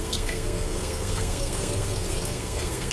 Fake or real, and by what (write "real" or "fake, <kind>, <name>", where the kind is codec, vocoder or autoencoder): fake, codec, SNAC